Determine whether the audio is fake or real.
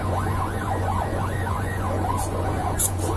fake